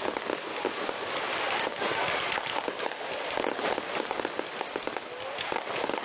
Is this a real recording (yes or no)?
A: yes